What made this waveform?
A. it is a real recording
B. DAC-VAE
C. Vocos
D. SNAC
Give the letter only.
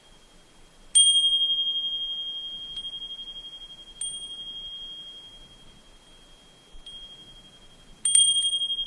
A